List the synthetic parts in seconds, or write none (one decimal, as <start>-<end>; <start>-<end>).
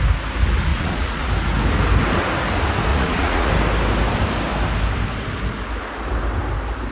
0.7-1.3; 2.9-3.5